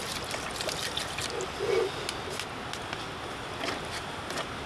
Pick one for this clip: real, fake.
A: real